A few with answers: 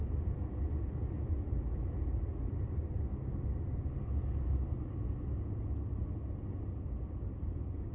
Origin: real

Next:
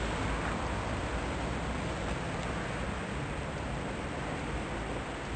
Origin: real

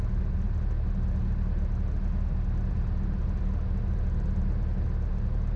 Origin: real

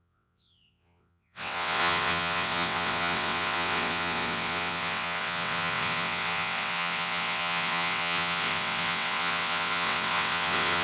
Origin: fake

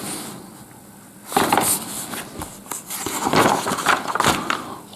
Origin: real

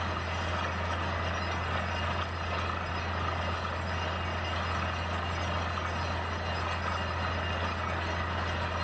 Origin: real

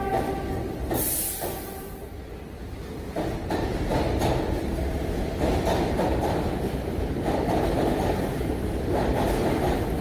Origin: real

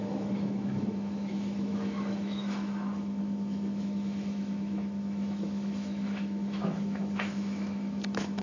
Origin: fake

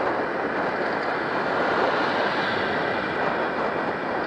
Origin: real